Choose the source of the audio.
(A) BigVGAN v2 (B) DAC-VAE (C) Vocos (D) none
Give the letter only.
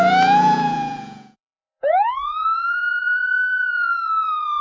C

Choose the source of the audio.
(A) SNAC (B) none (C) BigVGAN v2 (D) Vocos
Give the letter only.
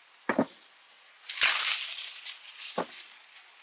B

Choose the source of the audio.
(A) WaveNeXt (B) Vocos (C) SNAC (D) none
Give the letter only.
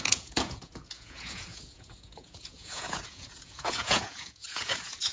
B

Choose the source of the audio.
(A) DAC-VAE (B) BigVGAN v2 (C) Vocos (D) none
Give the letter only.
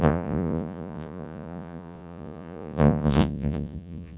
C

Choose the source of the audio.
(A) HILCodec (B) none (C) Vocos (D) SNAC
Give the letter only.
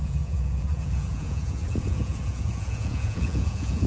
C